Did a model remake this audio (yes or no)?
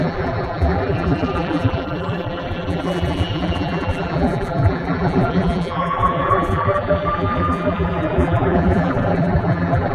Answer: yes